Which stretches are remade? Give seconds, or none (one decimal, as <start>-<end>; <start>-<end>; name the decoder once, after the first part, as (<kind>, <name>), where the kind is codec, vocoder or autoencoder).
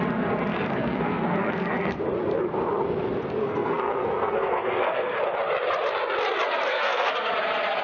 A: 0.5-2.0 (codec, SNAC); 3.4-5.2; 6.7-7.3